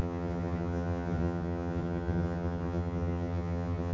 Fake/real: fake